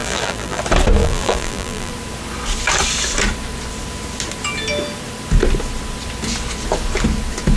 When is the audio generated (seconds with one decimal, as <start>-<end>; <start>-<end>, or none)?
0.0-0.6; 1.0-1.9

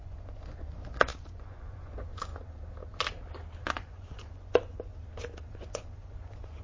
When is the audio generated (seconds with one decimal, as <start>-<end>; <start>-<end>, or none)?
0.0-2.3; 3.7-4.9; 5.5-6.6

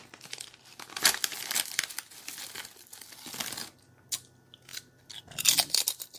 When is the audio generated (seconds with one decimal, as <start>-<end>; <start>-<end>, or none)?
none

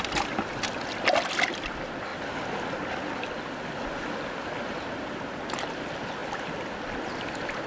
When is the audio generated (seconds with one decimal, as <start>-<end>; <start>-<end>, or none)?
none